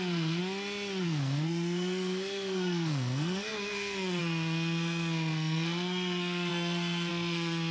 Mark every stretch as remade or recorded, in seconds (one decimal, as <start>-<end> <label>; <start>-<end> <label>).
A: 0.0-0.4 remade; 0.4-1.0 recorded; 1.0-7.7 remade